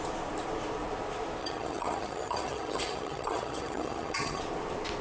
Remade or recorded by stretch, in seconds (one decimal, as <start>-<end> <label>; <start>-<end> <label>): 0.0-1.4 recorded; 1.4-4.4 remade; 4.4-5.0 recorded